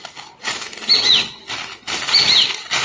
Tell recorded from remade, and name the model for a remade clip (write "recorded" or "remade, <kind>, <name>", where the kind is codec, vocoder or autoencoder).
recorded